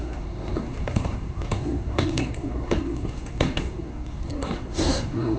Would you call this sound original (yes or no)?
no